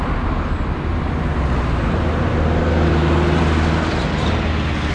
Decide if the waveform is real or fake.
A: real